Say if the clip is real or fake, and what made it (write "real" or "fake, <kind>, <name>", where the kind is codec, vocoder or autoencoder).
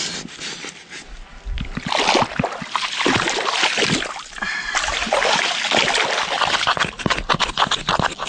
real